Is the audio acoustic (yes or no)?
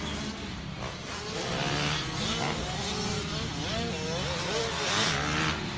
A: yes